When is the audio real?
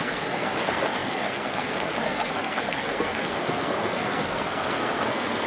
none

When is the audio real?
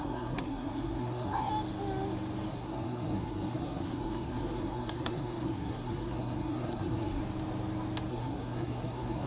1.5-2.5; 7.2-8.1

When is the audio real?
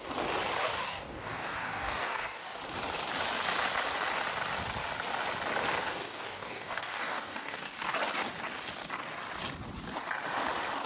0.0-0.6; 2.6-5.8; 7.7-10.9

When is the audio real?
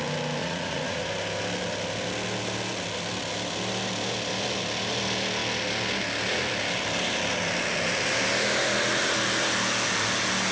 0.0-0.4; 1.1-10.5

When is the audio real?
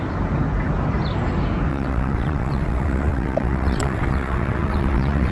0.0-1.7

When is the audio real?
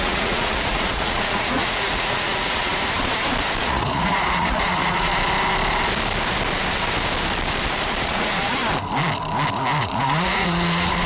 2.7-3.6; 5.1-8.0; 8.6-9.8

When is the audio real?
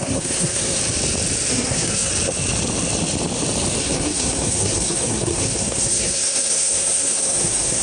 0.8-1.5; 2.1-3.8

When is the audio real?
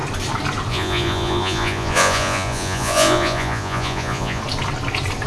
0.0-0.7; 4.4-5.3